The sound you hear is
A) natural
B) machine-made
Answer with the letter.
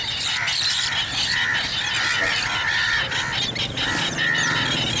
A